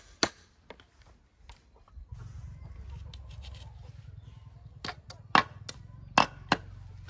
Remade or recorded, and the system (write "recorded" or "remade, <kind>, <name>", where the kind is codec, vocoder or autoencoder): recorded